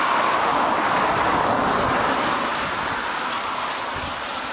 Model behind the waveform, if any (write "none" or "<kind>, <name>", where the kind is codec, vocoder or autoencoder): none